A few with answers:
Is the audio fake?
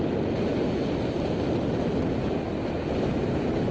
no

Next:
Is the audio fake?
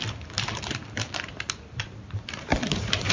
yes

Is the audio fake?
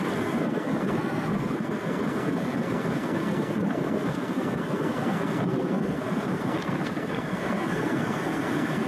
yes